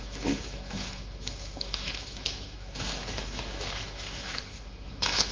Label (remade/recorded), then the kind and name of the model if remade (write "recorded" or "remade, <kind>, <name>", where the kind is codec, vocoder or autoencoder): remade, autoencoder, DAC-VAE